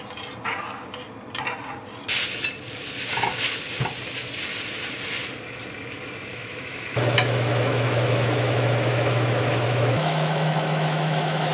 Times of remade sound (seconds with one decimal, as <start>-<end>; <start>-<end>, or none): 6.3-11.5